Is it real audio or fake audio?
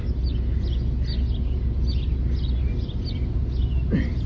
real